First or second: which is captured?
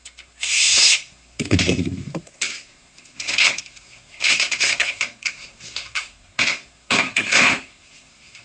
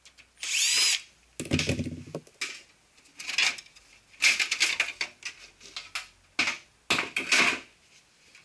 second